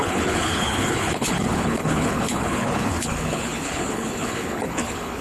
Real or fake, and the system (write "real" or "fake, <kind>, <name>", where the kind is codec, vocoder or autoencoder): fake, codec, HILCodec